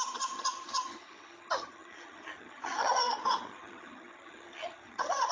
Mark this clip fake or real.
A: fake